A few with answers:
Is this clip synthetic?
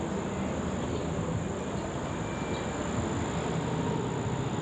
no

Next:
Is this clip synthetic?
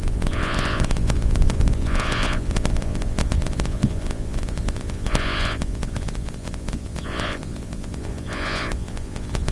yes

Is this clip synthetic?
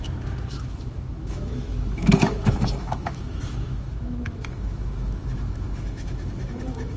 yes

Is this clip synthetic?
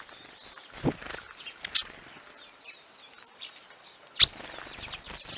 no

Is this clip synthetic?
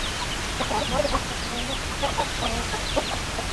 no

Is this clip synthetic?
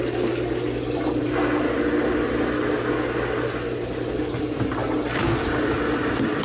no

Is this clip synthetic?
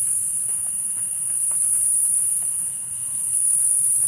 yes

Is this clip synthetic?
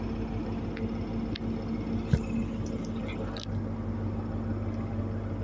no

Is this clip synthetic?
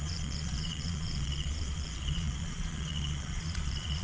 yes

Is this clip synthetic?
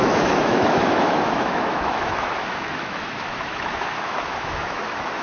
yes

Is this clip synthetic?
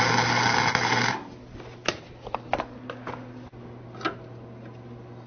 no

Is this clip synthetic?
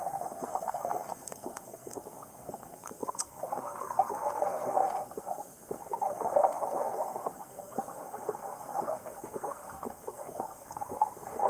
yes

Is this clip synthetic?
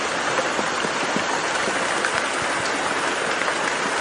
no